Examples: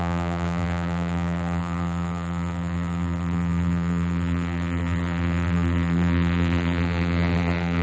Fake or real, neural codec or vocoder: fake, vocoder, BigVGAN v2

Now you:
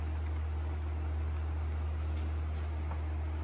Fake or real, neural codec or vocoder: real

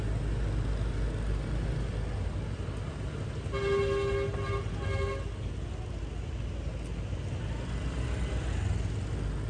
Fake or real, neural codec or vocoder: real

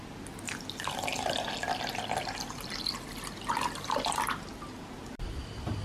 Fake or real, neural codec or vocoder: real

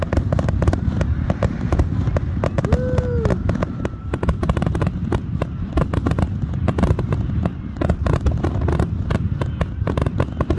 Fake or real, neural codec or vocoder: real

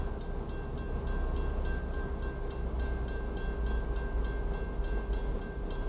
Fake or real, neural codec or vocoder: real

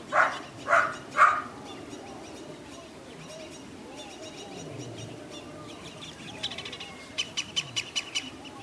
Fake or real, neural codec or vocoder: real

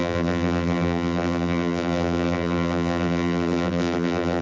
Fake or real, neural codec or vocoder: fake, vocoder, BigVGAN v2